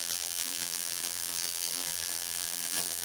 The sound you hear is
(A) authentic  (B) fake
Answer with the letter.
B